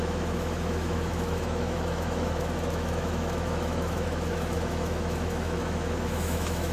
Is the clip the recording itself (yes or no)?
no